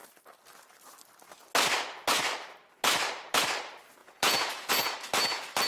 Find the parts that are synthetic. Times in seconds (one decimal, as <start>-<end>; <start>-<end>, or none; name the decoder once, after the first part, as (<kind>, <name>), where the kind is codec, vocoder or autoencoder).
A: 4.0-4.7 (vocoder, Vocos)